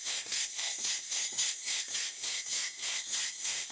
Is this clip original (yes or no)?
no